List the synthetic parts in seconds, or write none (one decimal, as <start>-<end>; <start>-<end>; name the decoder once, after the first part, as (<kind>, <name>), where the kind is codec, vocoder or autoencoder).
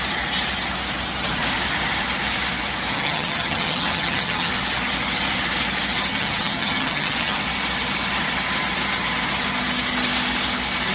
2.9-4.5 (vocoder, HiFi-GAN); 6.1-7.4